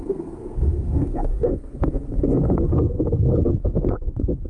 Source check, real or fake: fake